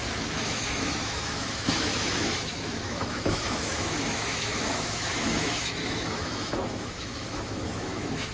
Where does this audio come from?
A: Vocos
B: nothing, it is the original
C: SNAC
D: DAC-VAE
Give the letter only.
D